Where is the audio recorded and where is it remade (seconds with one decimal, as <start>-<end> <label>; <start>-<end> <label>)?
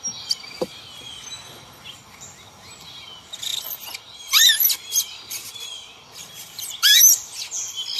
0.0-6.2 recorded; 6.2-7.0 remade; 7.0-8.0 recorded